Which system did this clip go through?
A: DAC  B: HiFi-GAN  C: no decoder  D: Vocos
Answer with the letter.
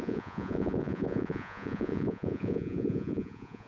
D